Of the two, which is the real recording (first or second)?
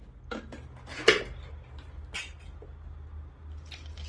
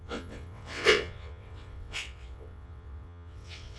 first